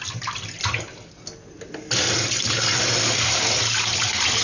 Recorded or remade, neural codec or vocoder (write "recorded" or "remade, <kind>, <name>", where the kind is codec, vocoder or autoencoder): recorded